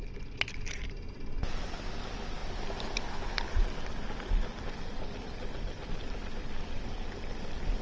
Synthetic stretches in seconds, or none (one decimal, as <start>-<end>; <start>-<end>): none